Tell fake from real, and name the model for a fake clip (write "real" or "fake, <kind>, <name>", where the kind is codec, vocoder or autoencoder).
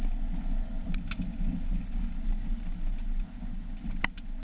real